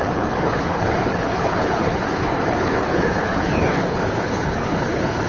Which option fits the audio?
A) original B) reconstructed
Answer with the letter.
B